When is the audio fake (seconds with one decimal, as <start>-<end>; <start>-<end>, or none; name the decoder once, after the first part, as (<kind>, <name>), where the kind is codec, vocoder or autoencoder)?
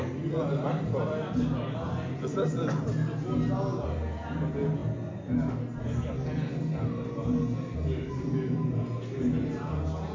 none